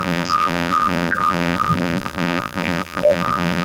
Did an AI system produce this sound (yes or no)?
yes